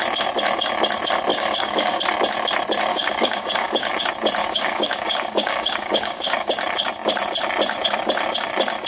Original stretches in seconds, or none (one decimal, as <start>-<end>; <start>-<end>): 0.0-1.3; 2.0-2.9; 3.9-4.4; 6.5-8.9